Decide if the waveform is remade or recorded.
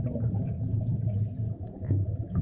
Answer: remade